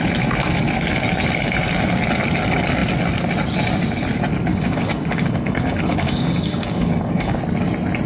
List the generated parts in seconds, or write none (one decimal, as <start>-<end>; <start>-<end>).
4.5-7.4

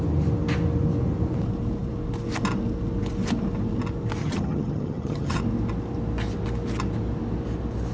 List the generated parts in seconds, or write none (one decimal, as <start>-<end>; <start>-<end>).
4.2-5.4

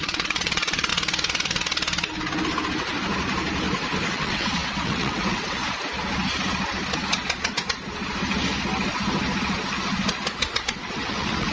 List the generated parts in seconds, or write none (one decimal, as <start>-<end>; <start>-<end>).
0.0-0.9; 4.1-5.6; 10.7-11.5